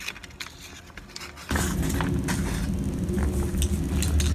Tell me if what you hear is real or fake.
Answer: real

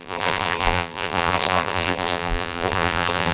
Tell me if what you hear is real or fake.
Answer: fake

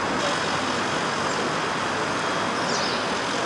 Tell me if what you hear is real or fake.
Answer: real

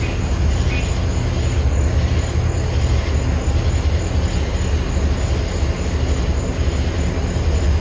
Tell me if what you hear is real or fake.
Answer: real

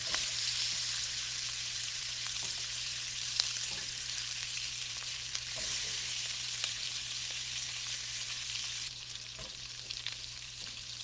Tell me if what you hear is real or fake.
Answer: fake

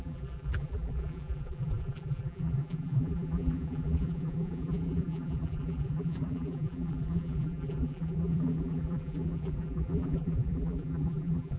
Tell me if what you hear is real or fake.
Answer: fake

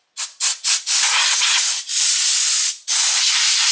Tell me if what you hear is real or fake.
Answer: real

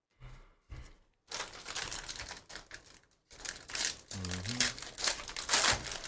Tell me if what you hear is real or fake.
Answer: real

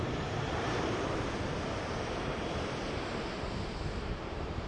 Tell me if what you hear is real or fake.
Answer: fake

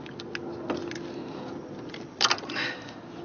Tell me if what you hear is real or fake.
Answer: real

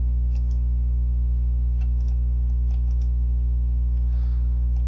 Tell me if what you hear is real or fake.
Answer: real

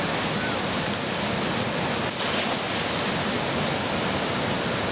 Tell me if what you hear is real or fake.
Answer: real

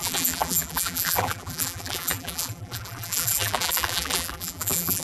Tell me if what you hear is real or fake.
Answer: fake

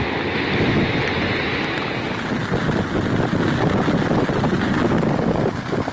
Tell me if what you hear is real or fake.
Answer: real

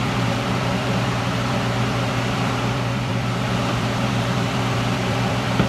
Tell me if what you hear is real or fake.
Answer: fake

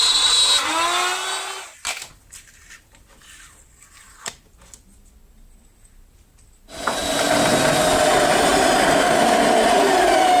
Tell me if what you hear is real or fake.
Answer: real